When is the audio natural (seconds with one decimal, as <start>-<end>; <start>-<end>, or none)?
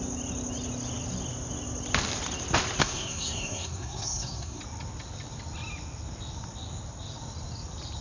0.0-2.8; 4.6-8.0